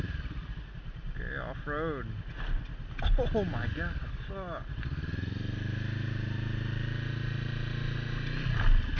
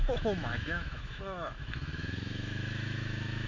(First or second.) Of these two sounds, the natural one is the first